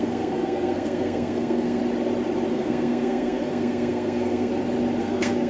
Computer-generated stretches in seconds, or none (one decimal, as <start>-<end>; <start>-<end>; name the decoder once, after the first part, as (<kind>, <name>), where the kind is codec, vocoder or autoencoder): 0.0-1.8 (codec, SNAC); 2.5-4.5; 5.0-5.5